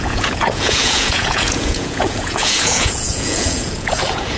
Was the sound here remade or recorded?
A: remade